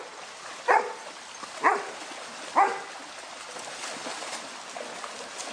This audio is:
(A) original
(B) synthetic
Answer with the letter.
A